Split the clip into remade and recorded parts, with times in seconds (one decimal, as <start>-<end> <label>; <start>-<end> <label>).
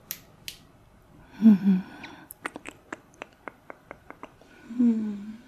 0.0-1.4 recorded; 1.4-4.2 remade; 4.2-5.5 recorded